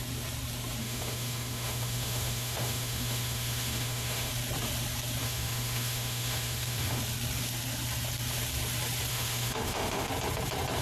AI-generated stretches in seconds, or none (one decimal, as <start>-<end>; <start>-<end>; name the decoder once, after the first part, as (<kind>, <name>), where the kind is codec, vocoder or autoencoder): 0.8-4.3 (autoencoder, DAC-VAE); 5.2-7.0; 9.1-10.1